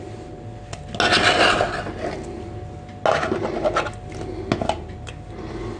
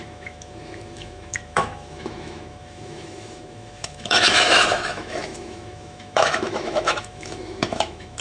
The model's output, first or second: second